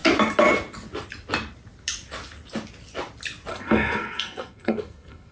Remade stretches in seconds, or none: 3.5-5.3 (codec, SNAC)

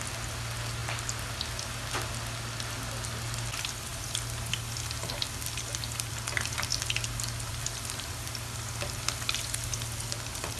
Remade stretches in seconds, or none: none

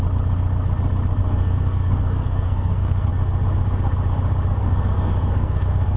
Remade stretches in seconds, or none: 1.2-3.1 (codec, SNAC); 4.6-6.0